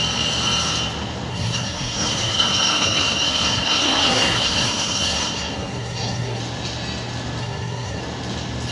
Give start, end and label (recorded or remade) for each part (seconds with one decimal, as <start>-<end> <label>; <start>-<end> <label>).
0.0-1.3 recorded; 1.3-6.4 remade; 6.4-7.4 recorded; 7.4-8.0 remade; 8.0-8.7 recorded